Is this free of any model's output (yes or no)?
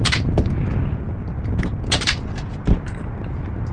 yes